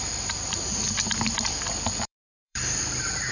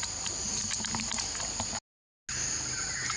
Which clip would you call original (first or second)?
second